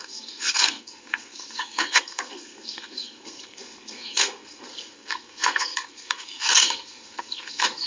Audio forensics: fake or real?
fake